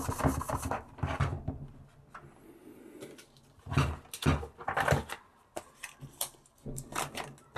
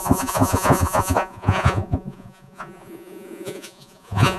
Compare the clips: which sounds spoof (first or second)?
second